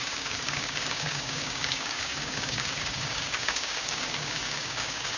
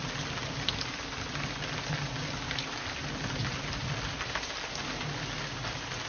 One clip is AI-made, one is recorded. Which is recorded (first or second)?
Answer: second